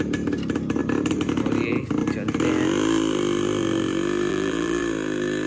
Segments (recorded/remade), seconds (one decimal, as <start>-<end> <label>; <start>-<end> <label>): 0.0-4.3 recorded; 4.3-4.8 remade; 4.8-5.5 recorded